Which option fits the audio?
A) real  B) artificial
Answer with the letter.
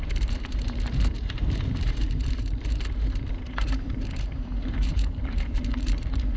B